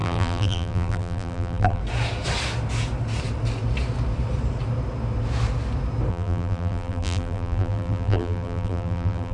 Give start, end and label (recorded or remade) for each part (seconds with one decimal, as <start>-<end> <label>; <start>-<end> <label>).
0.0-1.8 remade; 1.8-6.1 recorded; 6.1-9.3 remade